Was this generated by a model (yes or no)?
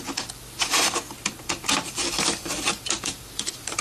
yes